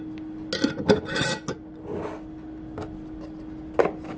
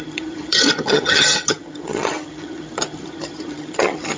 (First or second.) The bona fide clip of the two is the first